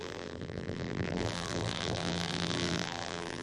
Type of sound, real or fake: fake